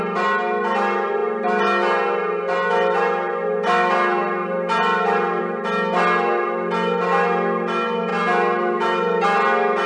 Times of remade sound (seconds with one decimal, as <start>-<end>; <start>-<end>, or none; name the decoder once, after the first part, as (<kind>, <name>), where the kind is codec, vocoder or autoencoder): none